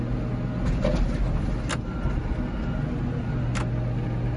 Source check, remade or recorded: recorded